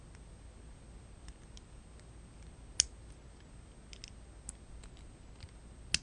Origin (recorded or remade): recorded